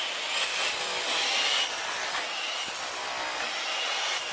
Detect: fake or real real